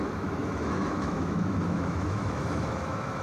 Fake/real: fake